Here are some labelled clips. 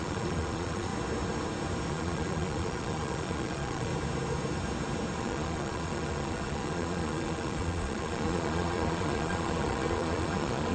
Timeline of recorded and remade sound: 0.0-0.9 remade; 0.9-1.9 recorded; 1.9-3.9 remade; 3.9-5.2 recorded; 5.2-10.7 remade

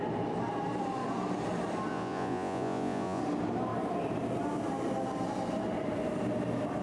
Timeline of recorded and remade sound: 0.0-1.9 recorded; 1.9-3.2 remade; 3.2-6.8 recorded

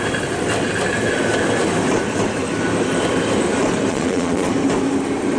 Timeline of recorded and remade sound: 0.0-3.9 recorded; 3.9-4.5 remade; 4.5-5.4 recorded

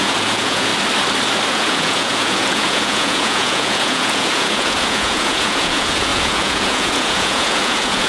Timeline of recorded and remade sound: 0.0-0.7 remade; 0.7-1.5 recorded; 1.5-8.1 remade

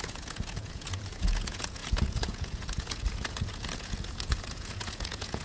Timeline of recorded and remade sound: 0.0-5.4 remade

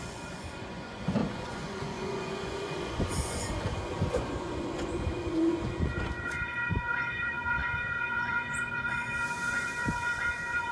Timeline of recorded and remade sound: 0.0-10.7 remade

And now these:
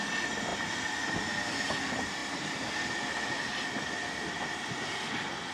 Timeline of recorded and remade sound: 0.0-5.5 recorded

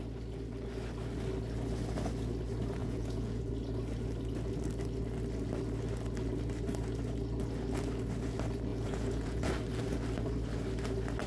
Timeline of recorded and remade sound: 0.0-2.8 recorded; 2.8-3.5 remade; 3.5-8.7 recorded; 8.7-9.5 remade; 9.5-11.3 recorded